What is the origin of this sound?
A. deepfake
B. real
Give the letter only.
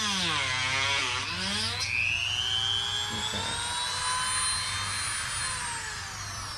B